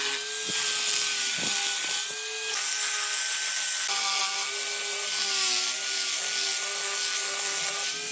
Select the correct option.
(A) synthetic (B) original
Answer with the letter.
B